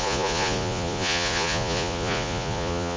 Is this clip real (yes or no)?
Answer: no